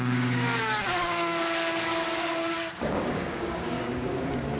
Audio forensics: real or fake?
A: fake